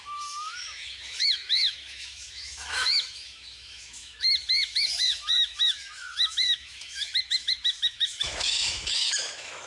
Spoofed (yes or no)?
yes